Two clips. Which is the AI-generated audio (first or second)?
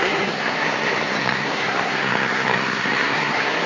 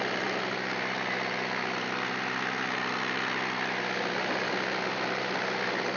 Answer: first